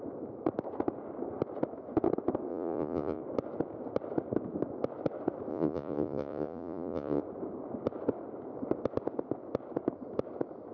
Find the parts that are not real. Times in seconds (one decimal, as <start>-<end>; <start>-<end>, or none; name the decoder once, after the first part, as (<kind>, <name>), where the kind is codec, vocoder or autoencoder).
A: 2.5-3.2 (vocoder, Vocos); 5.5-7.2